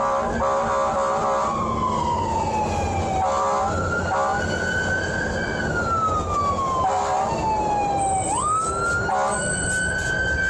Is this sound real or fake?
real